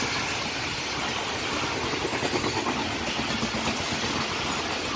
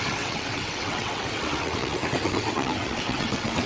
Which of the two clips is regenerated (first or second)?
second